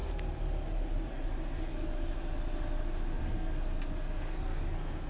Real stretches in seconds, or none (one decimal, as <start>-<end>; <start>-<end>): 0.0-3.2